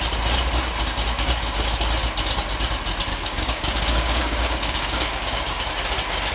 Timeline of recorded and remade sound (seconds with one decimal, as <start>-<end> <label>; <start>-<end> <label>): 0.0-3.1 recorded; 3.1-5.7 remade; 5.7-6.3 recorded